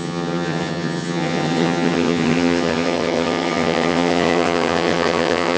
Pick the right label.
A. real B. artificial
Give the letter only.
B